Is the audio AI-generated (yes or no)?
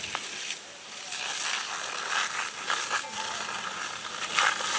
no